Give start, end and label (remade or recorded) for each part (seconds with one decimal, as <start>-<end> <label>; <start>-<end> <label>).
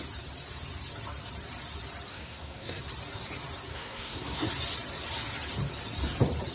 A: 0.0-2.1 recorded; 2.1-2.8 remade; 2.8-3.7 recorded; 3.7-4.5 remade; 4.5-6.5 recorded